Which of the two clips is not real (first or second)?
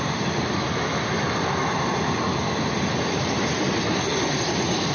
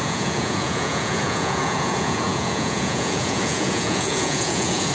second